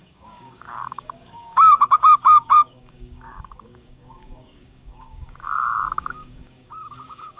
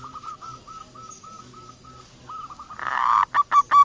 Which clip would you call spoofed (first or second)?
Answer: first